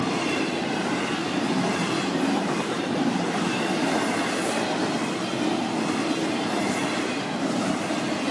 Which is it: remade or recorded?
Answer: recorded